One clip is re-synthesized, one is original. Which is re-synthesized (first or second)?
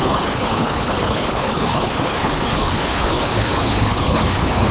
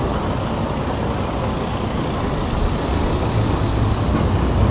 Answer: first